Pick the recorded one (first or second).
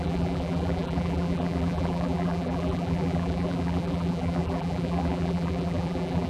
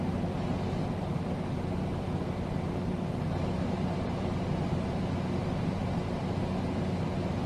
second